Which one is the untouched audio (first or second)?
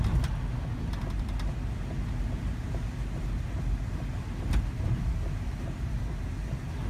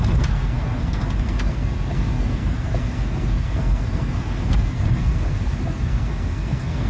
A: first